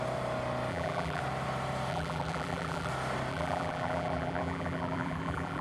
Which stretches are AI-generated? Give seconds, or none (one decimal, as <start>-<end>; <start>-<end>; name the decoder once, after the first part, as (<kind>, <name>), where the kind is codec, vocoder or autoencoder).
0.7-1.2 (vocoder, BigVGAN v2); 1.9-2.9; 3.3-5.6